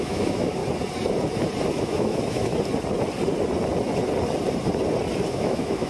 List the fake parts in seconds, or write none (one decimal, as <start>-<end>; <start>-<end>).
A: 0.0-0.6; 1.8-2.5; 5.3-5.9